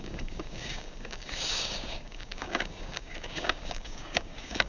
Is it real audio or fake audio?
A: fake